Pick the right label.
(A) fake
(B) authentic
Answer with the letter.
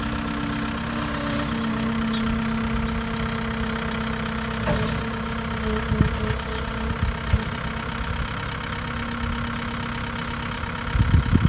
B